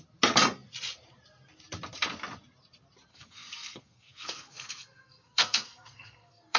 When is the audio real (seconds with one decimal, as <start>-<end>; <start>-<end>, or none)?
0.0-3.1